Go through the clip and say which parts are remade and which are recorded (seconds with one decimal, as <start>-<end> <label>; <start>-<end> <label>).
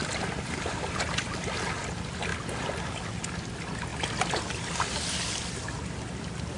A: 0.0-6.6 recorded